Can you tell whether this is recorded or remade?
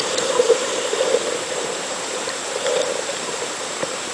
remade